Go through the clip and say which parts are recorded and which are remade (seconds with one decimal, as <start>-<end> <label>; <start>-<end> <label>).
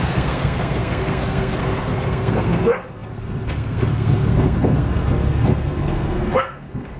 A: 0.0-7.0 remade